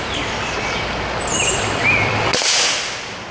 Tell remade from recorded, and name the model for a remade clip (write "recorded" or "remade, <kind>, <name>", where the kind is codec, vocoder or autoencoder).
recorded